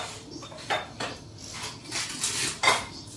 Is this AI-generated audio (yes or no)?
yes